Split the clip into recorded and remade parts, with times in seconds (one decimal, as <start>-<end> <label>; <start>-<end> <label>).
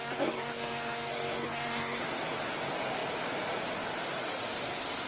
0.0-2.0 remade; 2.0-5.1 recorded